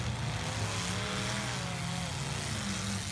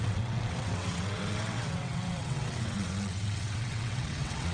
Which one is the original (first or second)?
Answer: first